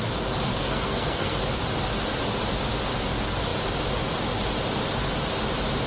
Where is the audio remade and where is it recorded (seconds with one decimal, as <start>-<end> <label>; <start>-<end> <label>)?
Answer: 0.0-0.5 recorded; 0.5-1.4 remade; 1.4-5.9 recorded